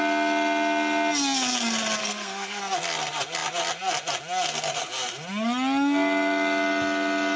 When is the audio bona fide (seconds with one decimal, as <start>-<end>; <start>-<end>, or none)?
0.0-2.0; 2.6-7.4